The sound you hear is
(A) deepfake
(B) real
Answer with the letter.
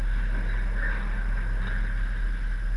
B